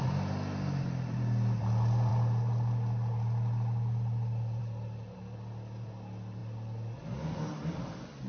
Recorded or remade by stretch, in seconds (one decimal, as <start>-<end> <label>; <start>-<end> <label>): 0.0-8.3 recorded